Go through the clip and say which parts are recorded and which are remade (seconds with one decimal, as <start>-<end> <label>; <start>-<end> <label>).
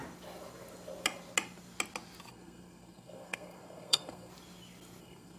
0.0-2.3 recorded; 2.3-4.3 remade; 4.3-5.0 recorded; 5.0-5.4 remade